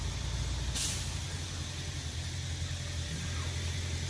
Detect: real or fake real